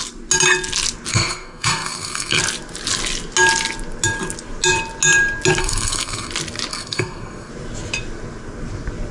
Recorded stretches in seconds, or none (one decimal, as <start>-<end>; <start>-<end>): 0.0-1.1; 2.4-5.6; 6.3-6.7; 7.5-9.1